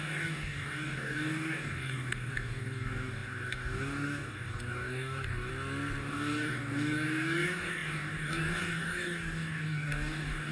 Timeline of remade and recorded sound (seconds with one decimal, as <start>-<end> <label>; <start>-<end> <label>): 0.0-5.5 remade; 5.5-6.0 recorded; 6.0-10.5 remade

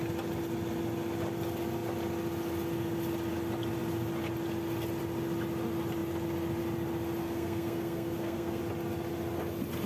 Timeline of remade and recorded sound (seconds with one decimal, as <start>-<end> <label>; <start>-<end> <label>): 0.0-7.2 recorded; 7.2-8.6 remade; 8.6-9.9 recorded

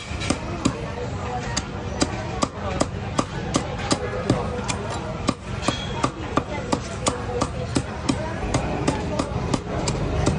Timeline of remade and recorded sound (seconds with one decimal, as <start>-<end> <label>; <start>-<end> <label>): 0.0-1.5 remade; 1.5-6.4 recorded; 6.4-10.4 remade

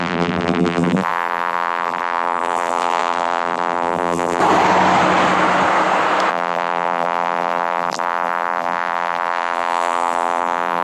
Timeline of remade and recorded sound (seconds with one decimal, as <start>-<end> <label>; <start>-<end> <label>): 0.0-4.4 remade; 4.4-6.3 recorded; 6.3-10.8 remade

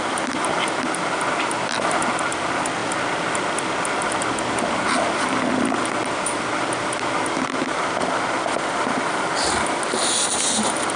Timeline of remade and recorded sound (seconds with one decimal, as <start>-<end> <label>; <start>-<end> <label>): 0.0-11.0 recorded

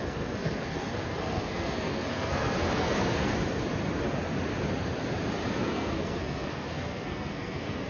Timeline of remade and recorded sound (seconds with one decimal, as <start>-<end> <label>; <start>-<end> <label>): 0.0-3.3 remade; 3.3-5.5 recorded; 5.5-7.9 remade

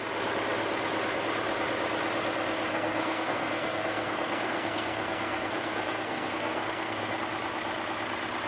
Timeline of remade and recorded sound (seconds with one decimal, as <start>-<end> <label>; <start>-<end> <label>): 0.0-2.7 recorded; 2.7-7.2 remade; 7.2-8.5 recorded